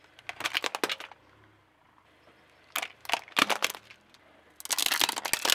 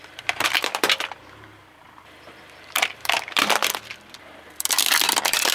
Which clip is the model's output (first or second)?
second